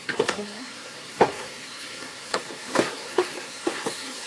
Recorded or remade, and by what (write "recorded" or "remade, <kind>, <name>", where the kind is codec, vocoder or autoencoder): remade, codec, SNAC